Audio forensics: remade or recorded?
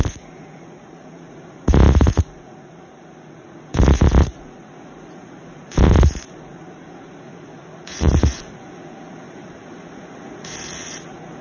remade